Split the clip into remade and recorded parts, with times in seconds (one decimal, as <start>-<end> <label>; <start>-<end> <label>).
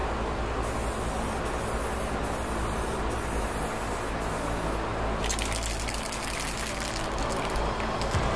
0.0-8.4 recorded